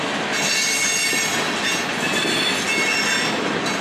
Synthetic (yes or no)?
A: no